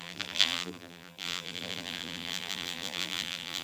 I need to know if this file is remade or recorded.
remade